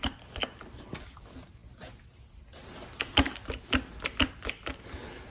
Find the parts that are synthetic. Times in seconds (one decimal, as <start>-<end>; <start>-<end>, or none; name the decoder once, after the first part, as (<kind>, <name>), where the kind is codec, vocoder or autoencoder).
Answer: none